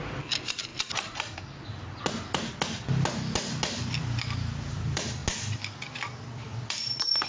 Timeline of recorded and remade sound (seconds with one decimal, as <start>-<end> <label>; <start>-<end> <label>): 0.0-0.7 remade; 0.7-4.0 recorded; 4.0-5.2 remade; 5.2-6.2 recorded; 6.2-7.3 remade